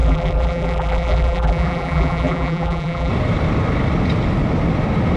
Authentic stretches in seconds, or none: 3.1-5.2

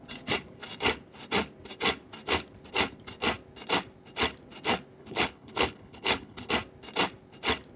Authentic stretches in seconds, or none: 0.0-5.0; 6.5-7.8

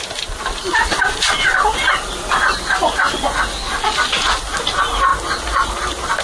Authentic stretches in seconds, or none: 0.0-6.2